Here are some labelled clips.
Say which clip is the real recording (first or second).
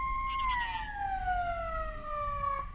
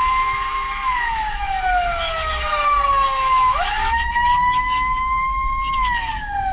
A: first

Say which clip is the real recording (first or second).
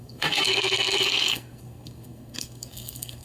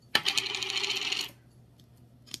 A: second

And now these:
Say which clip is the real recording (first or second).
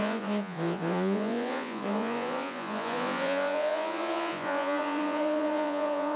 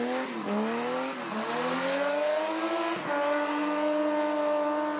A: second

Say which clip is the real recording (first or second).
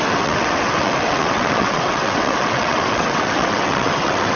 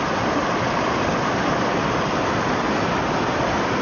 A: second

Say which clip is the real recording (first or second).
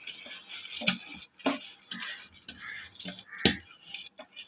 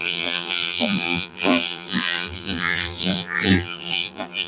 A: first